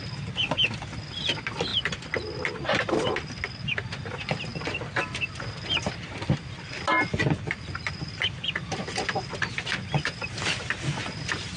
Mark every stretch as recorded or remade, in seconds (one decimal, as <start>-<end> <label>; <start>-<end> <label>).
0.0-1.7 recorded; 1.7-2.9 remade; 2.9-4.5 recorded; 4.5-5.9 remade; 5.9-7.1 recorded; 7.1-9.5 remade; 9.5-11.6 recorded